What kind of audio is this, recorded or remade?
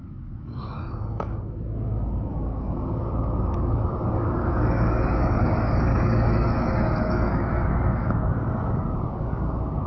remade